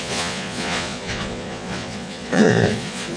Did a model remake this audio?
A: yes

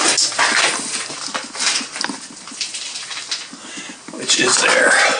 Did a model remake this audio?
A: no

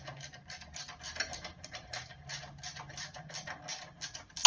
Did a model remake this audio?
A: no